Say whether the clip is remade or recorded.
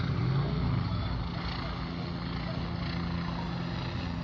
recorded